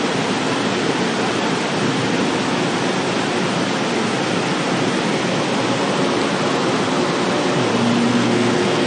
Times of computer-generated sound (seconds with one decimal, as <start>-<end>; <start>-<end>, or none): 8.1-8.9